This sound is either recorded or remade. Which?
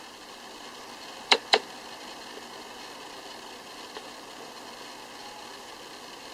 recorded